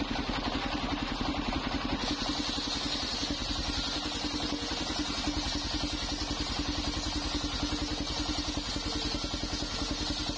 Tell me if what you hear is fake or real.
real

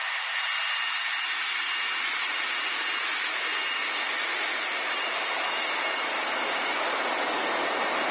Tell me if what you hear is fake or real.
real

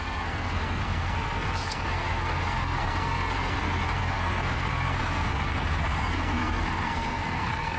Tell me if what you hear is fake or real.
fake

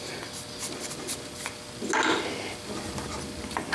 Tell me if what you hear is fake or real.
real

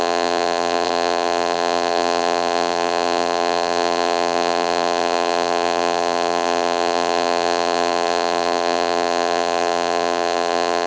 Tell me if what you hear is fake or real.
fake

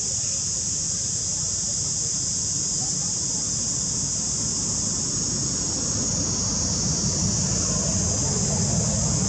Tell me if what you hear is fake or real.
real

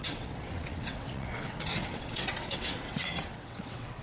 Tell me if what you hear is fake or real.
fake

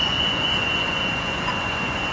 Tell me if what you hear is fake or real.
fake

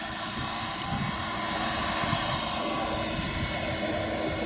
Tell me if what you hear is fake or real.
real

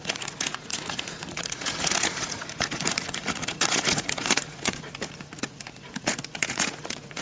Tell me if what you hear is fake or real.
fake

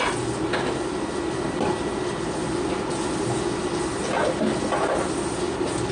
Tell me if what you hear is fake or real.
real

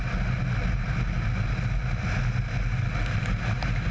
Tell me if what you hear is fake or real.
real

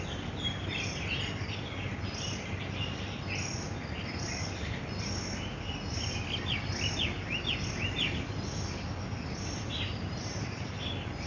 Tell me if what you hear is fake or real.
real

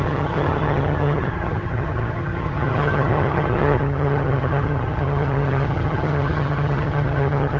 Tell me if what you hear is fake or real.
fake